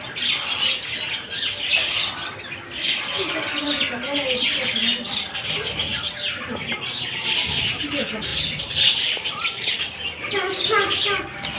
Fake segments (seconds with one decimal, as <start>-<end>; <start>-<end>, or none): 5.9-6.5; 8.3-11.2